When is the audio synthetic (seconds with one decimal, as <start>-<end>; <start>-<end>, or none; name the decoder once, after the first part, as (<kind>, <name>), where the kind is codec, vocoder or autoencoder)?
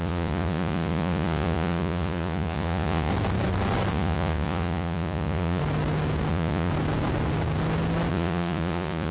0.0-3.1 (vocoder, Vocos); 3.9-5.6; 6.3-6.7; 8.1-9.1